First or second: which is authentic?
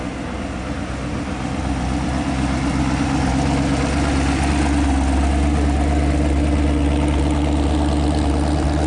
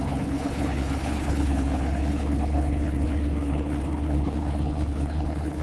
first